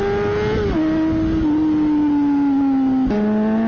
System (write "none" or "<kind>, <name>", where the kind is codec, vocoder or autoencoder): none